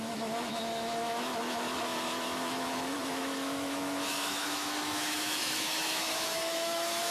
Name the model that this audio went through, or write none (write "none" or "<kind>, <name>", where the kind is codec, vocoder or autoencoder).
autoencoder, DAC-VAE